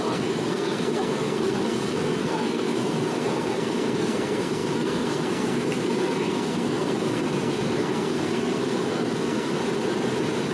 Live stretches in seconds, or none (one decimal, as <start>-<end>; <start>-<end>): 9.6-10.5